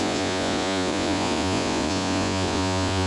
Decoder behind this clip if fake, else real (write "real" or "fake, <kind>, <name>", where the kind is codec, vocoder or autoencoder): fake, vocoder, Vocos